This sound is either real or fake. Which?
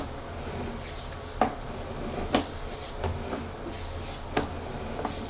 real